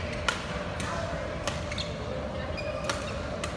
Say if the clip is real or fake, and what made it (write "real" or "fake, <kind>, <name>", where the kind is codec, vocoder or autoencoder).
real